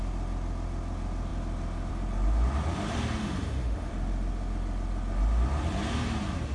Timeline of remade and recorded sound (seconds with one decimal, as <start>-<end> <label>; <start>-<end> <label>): 0.0-3.2 recorded; 3.2-3.9 remade; 3.9-6.5 recorded